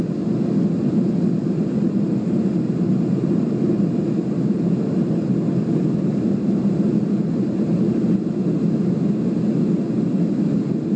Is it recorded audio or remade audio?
recorded